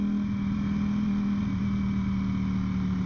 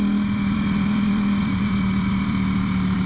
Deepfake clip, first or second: second